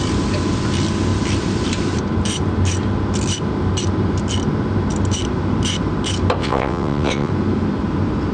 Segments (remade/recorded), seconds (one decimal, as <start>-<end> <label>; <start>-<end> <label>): 0.0-6.4 recorded; 6.4-7.3 remade; 7.3-8.3 recorded